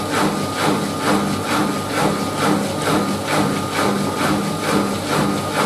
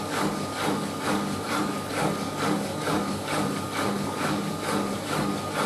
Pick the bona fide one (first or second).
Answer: first